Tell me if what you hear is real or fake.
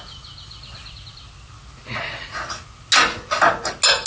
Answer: real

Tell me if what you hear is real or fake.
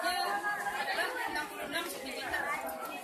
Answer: real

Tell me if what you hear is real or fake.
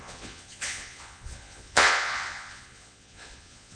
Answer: fake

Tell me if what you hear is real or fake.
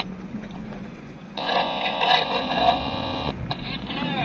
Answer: fake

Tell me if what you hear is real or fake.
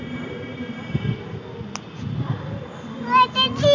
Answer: real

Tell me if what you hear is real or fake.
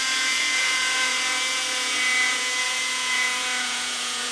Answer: fake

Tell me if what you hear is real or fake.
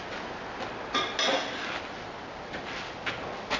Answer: real